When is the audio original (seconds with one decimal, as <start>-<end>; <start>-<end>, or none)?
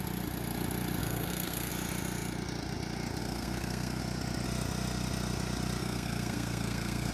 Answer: 0.0-1.0; 1.7-3.2; 4.0-5.8